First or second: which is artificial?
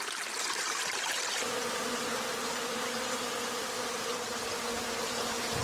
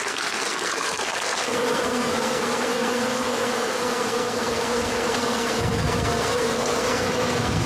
second